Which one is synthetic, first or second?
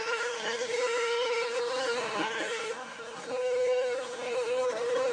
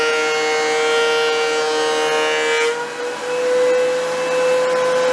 first